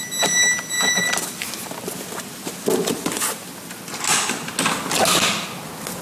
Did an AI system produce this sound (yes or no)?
no